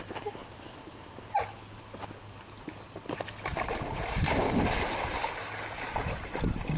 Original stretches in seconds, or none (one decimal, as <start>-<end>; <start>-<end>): 0.0-6.8